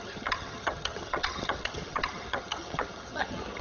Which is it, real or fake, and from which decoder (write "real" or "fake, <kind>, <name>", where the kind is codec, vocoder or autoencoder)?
fake, vocoder, HiFi-GAN